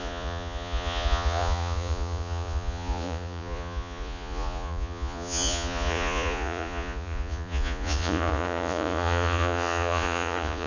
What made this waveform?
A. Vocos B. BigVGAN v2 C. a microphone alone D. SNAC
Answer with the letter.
A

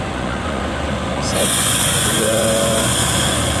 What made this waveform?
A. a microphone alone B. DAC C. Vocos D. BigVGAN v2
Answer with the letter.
C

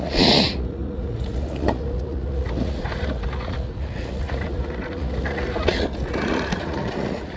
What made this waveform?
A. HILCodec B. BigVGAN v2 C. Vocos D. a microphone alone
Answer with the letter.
C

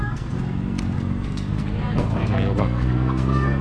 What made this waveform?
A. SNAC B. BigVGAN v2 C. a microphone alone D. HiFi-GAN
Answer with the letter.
A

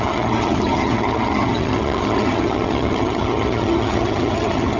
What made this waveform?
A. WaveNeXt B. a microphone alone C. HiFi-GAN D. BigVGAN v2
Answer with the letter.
C